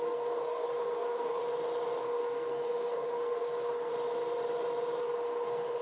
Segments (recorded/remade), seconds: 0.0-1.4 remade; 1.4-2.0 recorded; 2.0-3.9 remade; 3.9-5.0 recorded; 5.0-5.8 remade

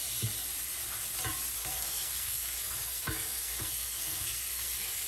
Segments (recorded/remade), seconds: 0.0-1.6 recorded; 1.6-5.1 remade